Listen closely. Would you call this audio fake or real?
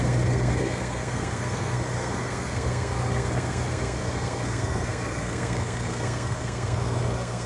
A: fake